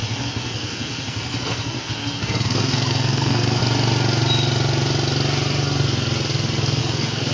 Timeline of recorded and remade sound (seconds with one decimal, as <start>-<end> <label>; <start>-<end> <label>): 0.0-3.6 remade; 3.6-6.8 recorded; 6.8-7.3 remade